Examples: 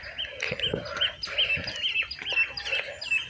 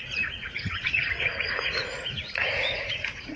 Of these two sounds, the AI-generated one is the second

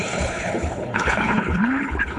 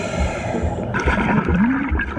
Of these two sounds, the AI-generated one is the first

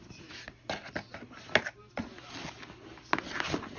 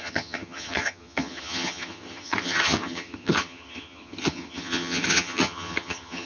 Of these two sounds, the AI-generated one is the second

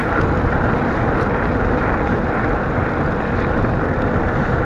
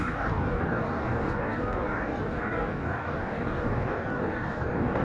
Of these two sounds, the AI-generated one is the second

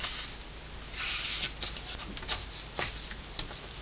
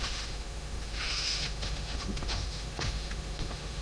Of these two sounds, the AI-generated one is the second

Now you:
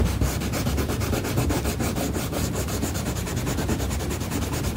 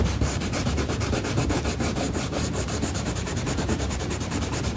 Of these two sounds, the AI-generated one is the second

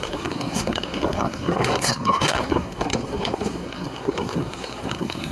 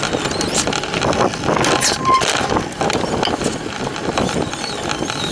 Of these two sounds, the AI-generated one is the first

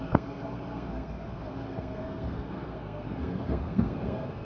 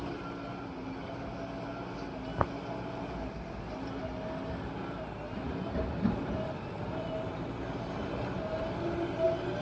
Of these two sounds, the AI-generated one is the first